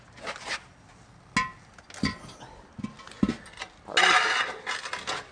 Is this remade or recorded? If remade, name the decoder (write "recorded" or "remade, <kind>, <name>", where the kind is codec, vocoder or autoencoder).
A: recorded